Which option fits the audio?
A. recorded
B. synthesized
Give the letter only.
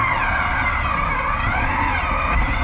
A